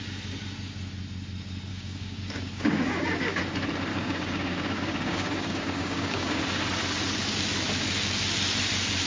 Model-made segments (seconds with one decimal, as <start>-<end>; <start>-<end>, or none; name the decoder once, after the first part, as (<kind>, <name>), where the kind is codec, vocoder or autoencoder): 1.7-3.4 (codec, DAC); 3.9-6.4

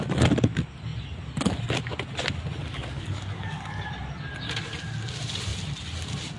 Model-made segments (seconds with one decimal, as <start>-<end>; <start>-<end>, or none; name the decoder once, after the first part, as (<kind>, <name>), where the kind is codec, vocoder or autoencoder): 2.6-3.9 (codec, DAC)

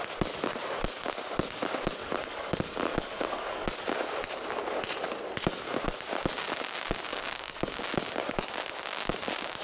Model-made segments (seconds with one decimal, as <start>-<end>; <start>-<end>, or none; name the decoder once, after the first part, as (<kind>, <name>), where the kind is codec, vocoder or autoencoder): 2.0-3.7 (codec, DAC); 7.1-7.8

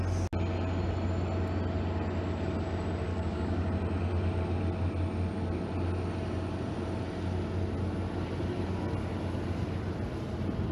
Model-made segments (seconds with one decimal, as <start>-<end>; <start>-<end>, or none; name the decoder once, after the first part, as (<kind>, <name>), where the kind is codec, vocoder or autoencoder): 3.1-3.7 (codec, DAC)

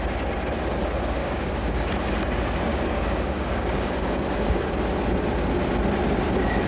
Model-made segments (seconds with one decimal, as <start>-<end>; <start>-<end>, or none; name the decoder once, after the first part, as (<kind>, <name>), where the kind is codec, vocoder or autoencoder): 1.2-1.9 (codec, DAC); 2.7-4.7

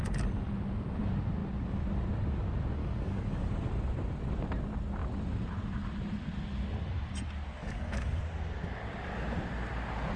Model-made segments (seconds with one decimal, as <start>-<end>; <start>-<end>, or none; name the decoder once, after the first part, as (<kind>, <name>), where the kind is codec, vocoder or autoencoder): 2.8-3.5 (codec, DAC); 7.6-8.2

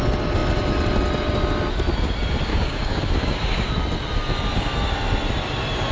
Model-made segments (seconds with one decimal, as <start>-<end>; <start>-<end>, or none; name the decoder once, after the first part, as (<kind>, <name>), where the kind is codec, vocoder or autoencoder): 2.5-3.7 (codec, DAC)

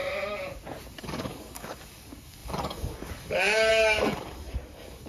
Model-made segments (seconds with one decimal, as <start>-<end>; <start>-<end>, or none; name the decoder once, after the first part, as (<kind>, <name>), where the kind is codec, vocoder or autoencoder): 1.0-5.1 (codec, DAC)